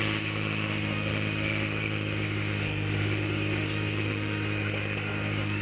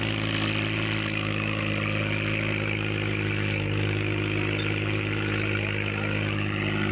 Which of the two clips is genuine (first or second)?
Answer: second